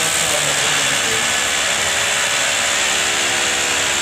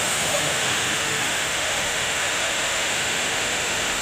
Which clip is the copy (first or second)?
second